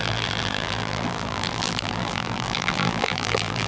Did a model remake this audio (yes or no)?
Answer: yes